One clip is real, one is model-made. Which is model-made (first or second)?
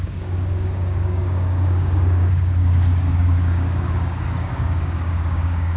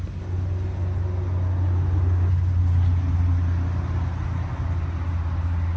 first